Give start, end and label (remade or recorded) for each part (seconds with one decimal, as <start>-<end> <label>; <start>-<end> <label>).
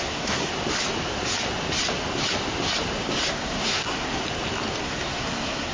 0.0-0.5 remade; 0.5-3.3 recorded; 3.3-4.2 remade; 4.2-4.8 recorded; 4.8-5.7 remade